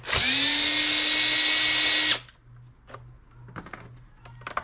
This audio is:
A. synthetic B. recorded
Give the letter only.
B